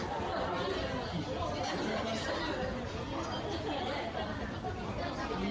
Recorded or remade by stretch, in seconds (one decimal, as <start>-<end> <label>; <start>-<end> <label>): 0.0-5.5 recorded